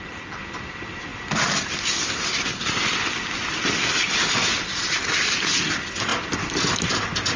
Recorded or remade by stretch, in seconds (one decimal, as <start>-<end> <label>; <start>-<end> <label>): 0.0-7.4 recorded